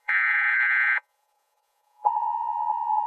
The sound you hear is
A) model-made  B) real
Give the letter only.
A